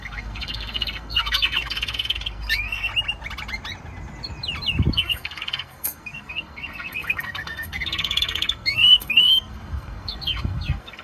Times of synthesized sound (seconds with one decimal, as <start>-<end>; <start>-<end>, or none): 0.0-2.9; 4.9-11.0